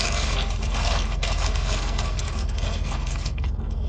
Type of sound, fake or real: fake